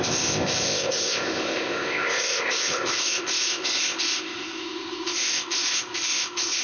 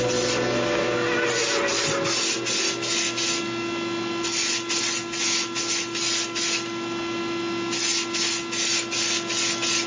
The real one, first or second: second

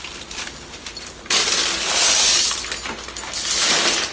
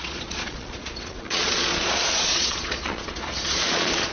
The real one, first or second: first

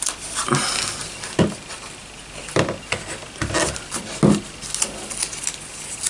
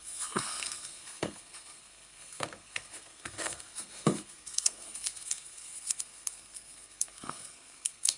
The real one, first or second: first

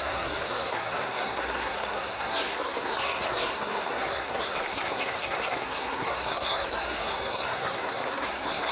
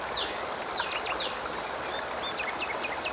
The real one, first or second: second